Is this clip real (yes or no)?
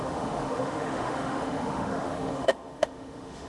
no